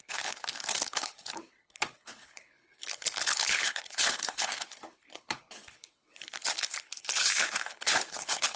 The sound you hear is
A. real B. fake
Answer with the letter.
B